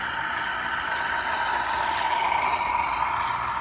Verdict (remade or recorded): recorded